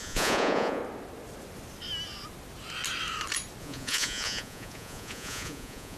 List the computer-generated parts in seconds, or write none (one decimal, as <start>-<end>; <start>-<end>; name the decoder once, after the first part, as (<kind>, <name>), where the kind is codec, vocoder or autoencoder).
0.0-0.8 (vocoder, Vocos); 3.6-6.0